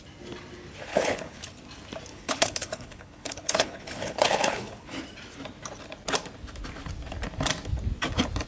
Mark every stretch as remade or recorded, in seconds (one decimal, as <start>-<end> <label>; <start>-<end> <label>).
0.0-0.9 recorded; 0.9-1.6 remade; 1.6-2.1 recorded; 2.1-5.0 remade; 5.0-8.5 recorded